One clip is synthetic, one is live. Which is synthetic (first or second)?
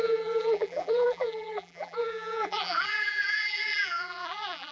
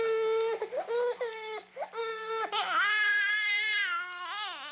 first